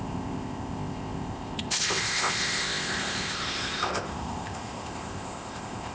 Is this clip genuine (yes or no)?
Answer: no